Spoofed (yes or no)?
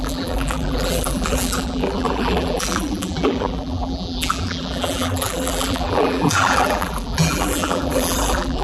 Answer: yes